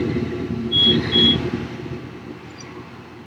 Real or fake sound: real